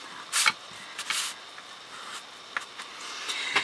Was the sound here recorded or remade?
recorded